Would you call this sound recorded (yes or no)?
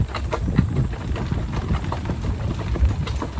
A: yes